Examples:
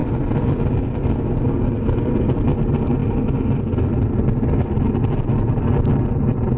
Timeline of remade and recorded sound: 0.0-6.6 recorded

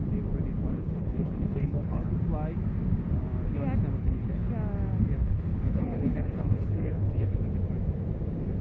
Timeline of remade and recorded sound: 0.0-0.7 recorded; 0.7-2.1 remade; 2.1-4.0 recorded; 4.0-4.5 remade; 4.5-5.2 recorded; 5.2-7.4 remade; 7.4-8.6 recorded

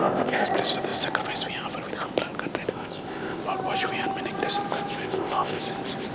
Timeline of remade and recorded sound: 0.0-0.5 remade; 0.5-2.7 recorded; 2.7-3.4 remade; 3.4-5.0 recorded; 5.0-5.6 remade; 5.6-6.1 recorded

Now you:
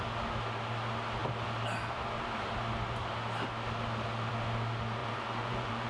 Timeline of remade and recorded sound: 0.0-5.0 recorded; 5.0-5.9 remade

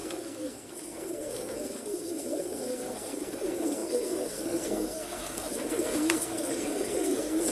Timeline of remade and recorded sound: 0.0-7.5 remade

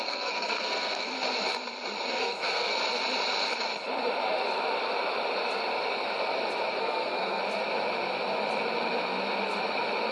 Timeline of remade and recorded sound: 0.0-1.1 remade; 1.1-2.1 recorded; 2.1-2.7 remade; 2.7-6.8 recorded; 6.8-7.4 remade; 7.4-10.1 recorded

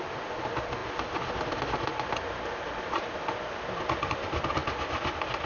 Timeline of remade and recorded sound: 0.0-5.5 recorded